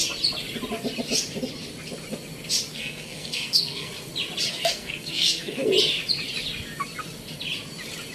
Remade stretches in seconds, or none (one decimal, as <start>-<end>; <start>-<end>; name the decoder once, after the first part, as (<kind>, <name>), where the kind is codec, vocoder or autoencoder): 2.7-3.9 (codec, SNAC); 4.5-5.7